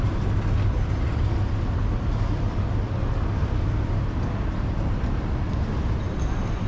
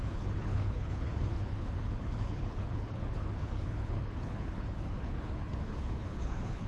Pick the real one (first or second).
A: first